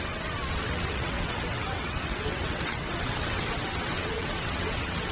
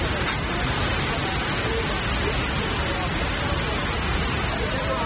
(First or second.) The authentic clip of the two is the second